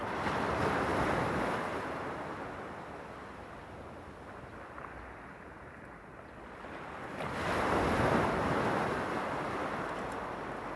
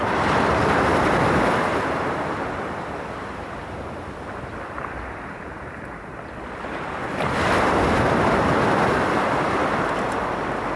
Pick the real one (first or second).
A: first